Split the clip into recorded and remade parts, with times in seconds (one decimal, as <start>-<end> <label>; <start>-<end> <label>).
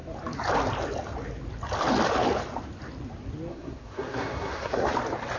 0.0-3.5 recorded; 3.5-4.9 remade; 4.9-5.4 recorded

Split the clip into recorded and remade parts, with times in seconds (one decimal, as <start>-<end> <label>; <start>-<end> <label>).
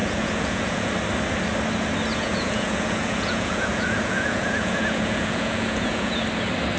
0.0-0.9 remade; 0.9-2.1 recorded; 2.1-6.2 remade; 6.2-6.8 recorded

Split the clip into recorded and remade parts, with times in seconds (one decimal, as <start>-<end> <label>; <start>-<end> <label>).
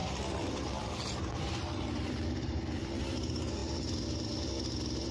0.0-5.1 recorded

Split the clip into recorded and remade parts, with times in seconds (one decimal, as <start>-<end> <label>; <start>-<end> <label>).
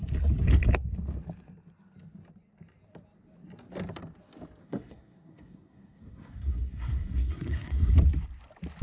0.0-4.6 recorded; 4.6-7.9 remade; 7.9-8.8 recorded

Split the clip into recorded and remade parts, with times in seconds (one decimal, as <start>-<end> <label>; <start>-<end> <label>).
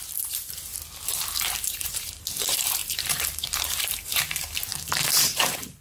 0.0-0.7 remade; 0.7-1.4 recorded; 1.4-5.8 remade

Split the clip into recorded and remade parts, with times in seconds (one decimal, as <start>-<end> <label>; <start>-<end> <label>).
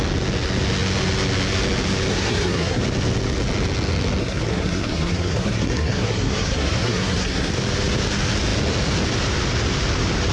0.0-2.1 recorded; 2.1-2.8 remade; 2.8-4.2 recorded; 4.2-7.5 remade; 7.5-10.3 recorded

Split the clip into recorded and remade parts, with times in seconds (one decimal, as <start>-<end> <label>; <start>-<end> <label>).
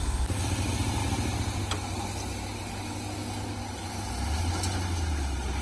0.0-5.6 recorded